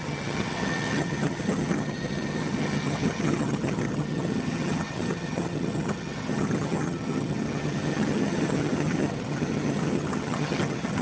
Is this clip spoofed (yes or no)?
yes